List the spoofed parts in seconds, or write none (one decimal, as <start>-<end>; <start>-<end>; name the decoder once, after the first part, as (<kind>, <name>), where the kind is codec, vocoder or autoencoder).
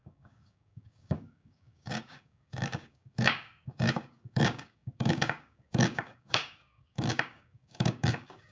0.0-8.5 (codec, DAC)